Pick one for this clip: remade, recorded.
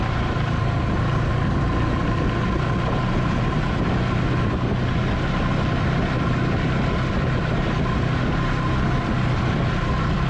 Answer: recorded